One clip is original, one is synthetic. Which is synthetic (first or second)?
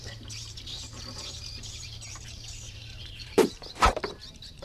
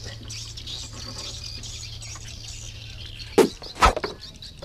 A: first